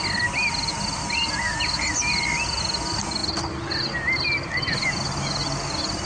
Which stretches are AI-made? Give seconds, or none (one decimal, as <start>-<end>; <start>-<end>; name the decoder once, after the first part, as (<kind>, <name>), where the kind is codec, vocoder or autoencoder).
none